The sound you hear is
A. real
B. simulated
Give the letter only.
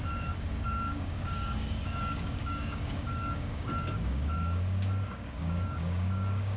B